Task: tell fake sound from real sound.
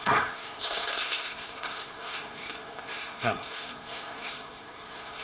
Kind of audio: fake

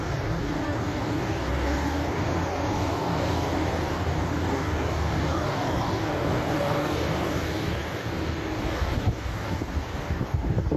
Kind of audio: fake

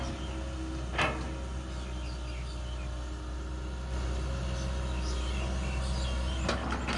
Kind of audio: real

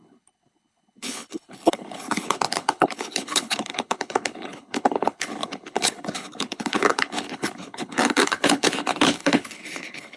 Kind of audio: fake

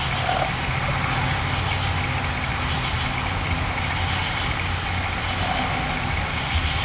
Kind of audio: real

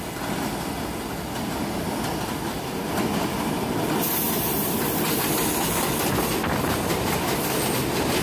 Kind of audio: real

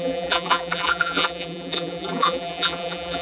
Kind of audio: fake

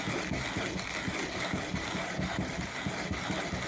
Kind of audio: real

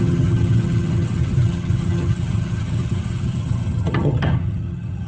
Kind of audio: fake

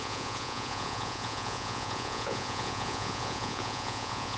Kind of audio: fake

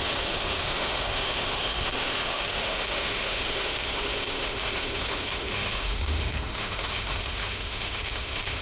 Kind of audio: fake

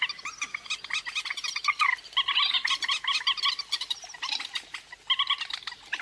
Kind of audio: real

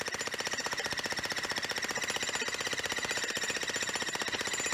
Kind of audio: real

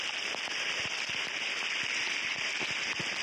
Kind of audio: real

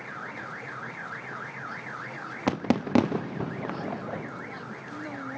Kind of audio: real